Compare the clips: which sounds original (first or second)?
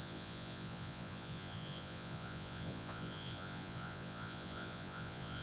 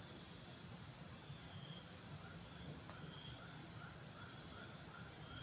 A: second